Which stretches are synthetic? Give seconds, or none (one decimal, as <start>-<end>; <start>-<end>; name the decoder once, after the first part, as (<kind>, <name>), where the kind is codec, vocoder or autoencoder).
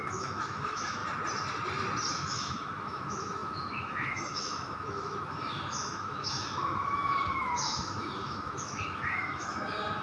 0.0-1.0 (autoencoder, DAC-VAE); 2.1-10.0